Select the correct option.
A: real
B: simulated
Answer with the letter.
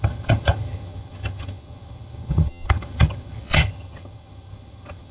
B